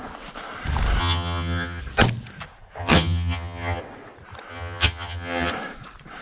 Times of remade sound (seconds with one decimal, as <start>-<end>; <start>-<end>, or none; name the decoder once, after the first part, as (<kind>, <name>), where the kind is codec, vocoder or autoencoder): 1.0-1.8 (vocoder, HiFi-GAN); 2.8-3.8; 4.5-5.5